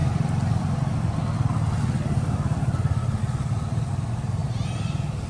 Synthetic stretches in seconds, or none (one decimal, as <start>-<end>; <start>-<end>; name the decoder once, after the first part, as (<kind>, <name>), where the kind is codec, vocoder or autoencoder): none